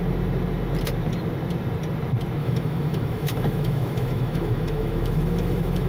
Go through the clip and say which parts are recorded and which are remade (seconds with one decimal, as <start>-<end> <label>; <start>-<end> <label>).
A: 0.0-2.4 recorded; 2.4-5.9 remade